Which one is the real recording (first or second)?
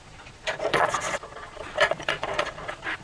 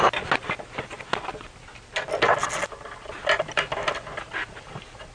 second